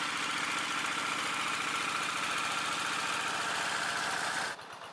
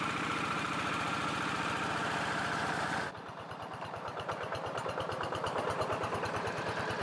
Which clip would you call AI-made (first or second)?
second